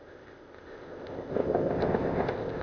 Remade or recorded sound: remade